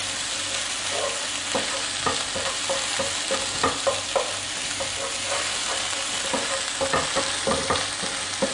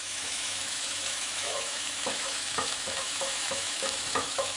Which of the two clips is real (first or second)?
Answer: first